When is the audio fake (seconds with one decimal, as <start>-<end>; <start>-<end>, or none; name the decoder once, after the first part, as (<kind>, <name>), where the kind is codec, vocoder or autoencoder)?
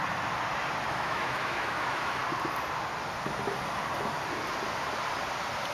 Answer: 0.9-2.2 (autoencoder, DAC-VAE)